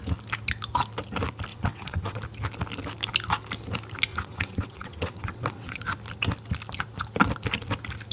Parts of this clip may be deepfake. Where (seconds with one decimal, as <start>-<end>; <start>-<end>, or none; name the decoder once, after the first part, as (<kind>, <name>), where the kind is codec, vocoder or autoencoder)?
1.5-2.2 (vocoder, WaveNeXt); 4.1-5.8